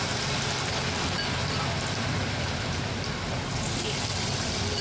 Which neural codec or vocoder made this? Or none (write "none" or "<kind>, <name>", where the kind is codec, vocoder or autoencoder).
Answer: vocoder, BigVGAN v2